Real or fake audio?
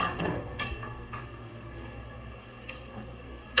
fake